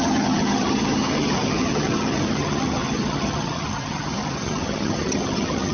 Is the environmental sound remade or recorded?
remade